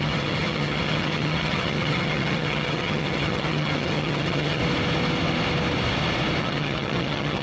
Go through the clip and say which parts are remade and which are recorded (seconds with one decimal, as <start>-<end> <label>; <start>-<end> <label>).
0.0-4.6 remade; 4.6-6.4 recorded; 6.4-7.4 remade